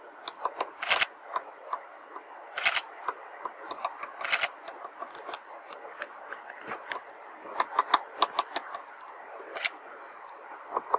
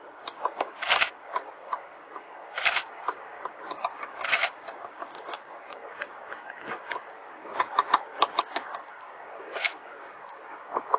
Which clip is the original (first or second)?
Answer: first